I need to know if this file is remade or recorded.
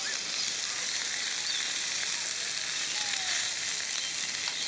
recorded